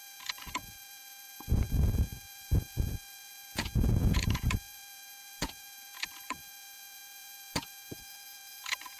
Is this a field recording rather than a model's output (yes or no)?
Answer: no